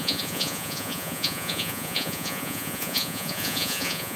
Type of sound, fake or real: fake